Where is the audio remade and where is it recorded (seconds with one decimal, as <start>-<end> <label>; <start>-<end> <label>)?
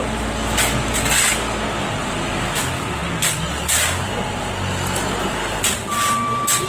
0.0-6.7 recorded